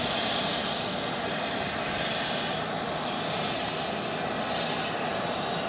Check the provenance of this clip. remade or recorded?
recorded